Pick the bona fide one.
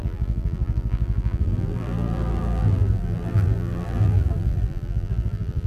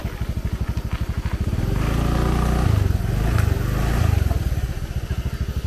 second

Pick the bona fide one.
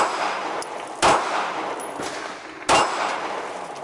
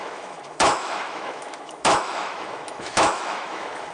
first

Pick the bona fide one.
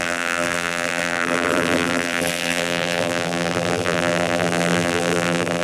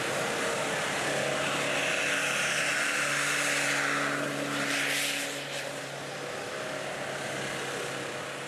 second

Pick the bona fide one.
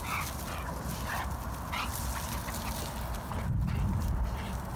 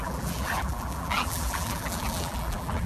first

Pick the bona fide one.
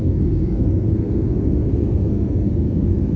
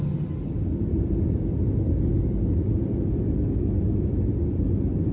second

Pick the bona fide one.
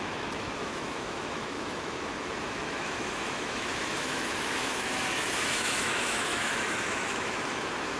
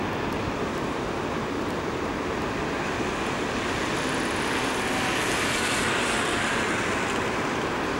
second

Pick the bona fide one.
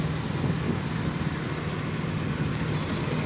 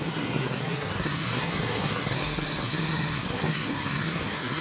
first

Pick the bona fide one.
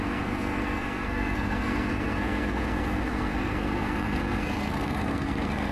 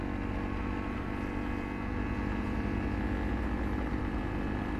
second